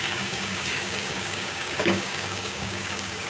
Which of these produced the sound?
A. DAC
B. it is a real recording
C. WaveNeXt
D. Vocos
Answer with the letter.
A